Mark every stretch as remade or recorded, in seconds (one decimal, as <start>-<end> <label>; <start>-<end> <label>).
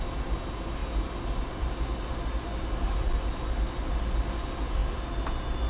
0.0-5.7 recorded